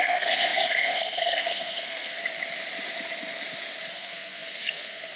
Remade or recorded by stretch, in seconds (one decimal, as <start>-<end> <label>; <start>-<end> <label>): 0.0-2.2 remade; 2.2-3.9 recorded; 3.9-5.2 remade